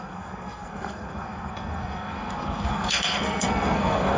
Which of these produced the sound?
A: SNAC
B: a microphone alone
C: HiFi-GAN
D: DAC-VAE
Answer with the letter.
A